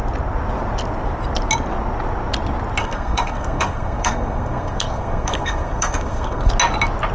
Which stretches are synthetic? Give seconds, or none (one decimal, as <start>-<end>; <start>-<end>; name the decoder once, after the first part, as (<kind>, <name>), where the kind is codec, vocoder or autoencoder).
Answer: 2.8-6.5 (codec, SNAC)